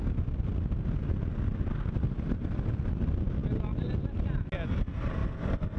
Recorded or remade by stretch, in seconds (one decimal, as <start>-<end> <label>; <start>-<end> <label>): 0.0-5.8 recorded